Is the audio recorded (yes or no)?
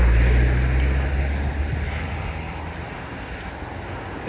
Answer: yes